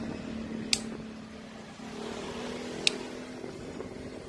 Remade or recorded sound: recorded